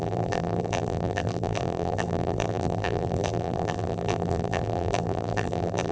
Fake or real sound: fake